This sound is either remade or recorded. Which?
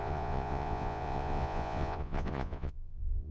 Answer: remade